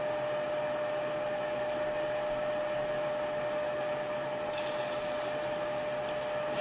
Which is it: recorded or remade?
recorded